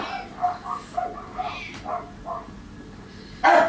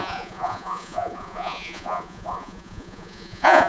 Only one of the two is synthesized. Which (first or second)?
second